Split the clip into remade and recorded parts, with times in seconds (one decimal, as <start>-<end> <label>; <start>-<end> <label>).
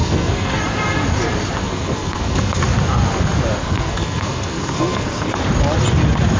0.0-0.6 remade; 0.6-1.6 recorded; 1.6-2.6 remade; 2.6-3.6 recorded; 3.6-5.4 remade; 5.4-6.4 recorded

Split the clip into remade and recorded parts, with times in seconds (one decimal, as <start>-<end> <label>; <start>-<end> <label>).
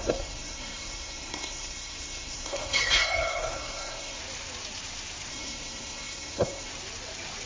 0.0-4.2 remade; 4.2-5.3 recorded; 5.3-6.7 remade; 6.7-7.5 recorded